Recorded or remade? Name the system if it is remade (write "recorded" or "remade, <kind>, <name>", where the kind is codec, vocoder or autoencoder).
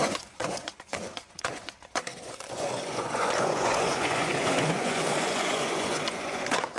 remade, vocoder, Vocos